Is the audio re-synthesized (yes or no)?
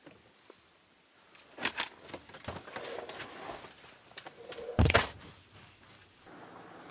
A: no